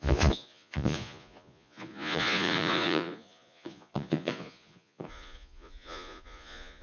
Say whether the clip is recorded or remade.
remade